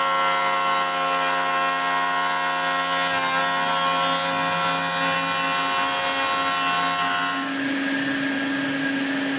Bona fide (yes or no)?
yes